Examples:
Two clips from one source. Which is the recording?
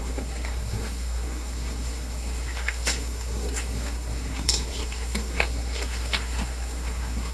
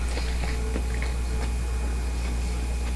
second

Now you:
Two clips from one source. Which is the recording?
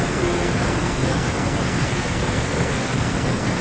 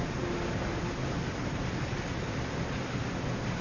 second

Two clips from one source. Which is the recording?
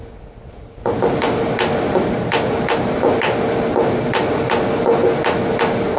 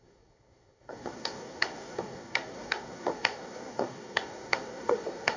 first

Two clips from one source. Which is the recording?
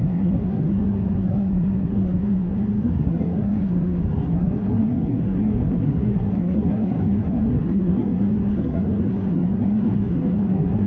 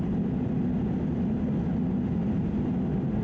second